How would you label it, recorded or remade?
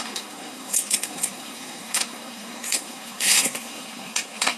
remade